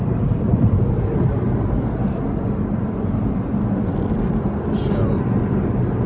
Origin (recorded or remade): recorded